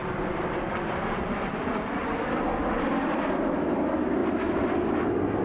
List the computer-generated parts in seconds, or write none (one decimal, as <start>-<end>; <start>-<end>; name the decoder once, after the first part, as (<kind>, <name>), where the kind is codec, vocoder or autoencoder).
0.0-2.0 (vocoder, BigVGAN v2)